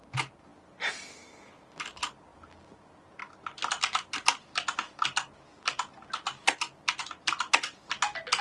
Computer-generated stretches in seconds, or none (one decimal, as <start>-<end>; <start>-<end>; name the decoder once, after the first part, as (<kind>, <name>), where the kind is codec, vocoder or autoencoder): none